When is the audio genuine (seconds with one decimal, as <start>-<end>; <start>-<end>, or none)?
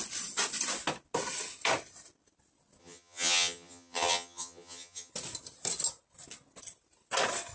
0.0-2.8; 5.1-7.5